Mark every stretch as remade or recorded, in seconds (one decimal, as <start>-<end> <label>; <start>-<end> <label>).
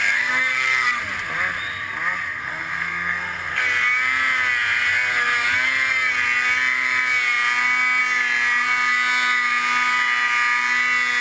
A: 0.0-1.0 remade; 1.0-2.4 recorded; 2.4-3.6 remade; 3.6-11.2 recorded